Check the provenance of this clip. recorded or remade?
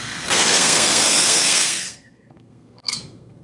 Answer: remade